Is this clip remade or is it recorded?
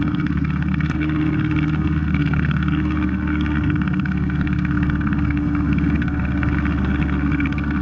remade